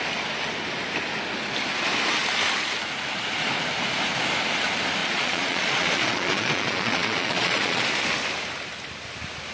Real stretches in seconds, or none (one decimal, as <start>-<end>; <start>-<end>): 0.0-5.0; 7.8-9.5